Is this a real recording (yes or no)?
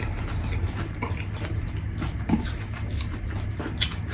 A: yes